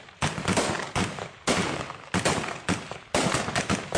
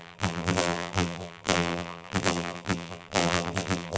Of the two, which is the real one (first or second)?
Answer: first